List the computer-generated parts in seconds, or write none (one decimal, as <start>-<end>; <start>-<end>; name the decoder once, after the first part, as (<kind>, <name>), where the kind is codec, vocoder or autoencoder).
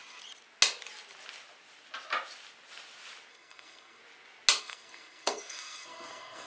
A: 3.3-4.0 (codec, SNAC); 4.6-6.5